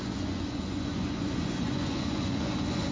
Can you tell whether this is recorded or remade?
remade